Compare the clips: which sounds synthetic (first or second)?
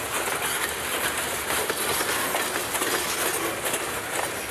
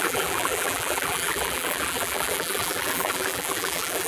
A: second